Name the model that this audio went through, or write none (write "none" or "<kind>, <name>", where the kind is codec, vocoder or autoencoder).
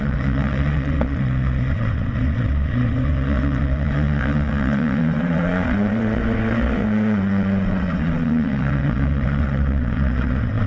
vocoder, WaveNeXt